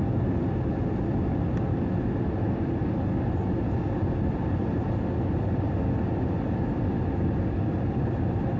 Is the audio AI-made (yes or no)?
no